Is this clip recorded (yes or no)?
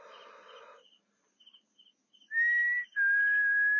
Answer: yes